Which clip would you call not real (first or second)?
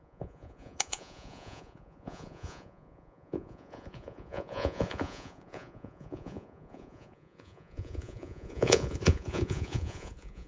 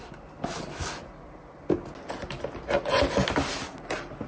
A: first